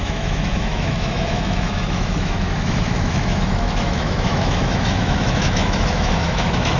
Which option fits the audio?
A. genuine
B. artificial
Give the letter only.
B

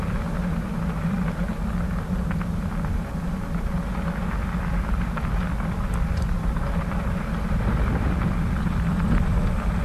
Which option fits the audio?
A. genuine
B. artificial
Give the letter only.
A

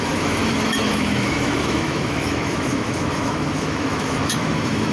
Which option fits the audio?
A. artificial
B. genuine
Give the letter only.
A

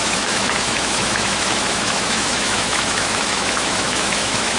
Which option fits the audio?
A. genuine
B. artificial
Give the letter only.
B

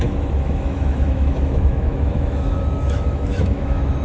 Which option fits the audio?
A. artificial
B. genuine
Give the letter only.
A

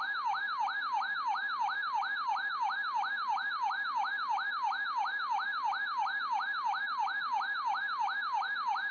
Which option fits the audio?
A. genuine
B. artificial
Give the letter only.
A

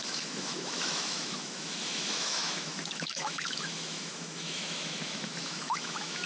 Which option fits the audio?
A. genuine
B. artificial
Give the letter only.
B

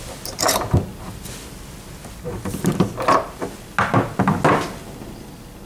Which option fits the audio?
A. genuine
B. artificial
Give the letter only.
A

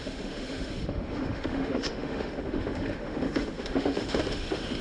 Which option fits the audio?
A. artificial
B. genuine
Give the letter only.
A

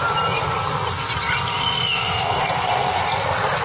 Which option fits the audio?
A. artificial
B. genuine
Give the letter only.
B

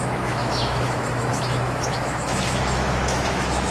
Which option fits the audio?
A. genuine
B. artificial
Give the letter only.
B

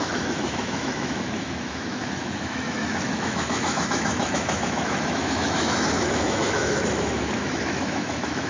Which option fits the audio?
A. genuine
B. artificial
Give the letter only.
B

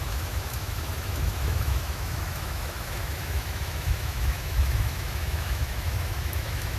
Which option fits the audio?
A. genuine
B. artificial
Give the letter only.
B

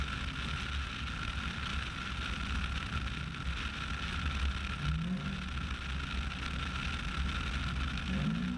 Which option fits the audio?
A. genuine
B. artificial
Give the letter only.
A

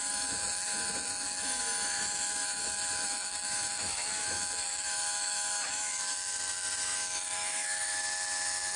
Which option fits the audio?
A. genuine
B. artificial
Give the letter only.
B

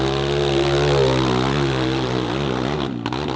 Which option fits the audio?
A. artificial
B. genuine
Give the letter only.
B